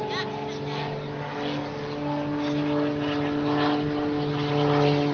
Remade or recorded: recorded